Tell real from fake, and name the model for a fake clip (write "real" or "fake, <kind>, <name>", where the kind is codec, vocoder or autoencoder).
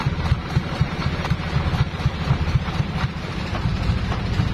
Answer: fake, vocoder, BigVGAN v2